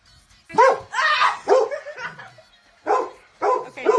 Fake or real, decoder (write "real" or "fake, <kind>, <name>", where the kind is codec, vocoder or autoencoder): real